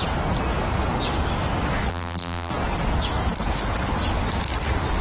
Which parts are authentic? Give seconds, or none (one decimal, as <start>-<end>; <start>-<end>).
0.0-1.9; 2.5-5.0